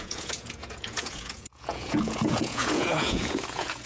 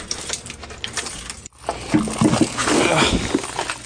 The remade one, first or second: first